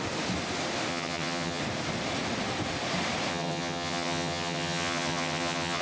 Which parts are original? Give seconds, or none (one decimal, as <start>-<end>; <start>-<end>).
0.0-0.9; 1.6-3.3